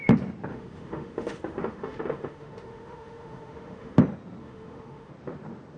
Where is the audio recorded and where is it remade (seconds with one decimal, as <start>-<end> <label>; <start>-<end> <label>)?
0.0-0.5 recorded; 0.5-4.0 remade; 4.0-4.4 recorded; 4.4-5.1 remade; 5.1-5.8 recorded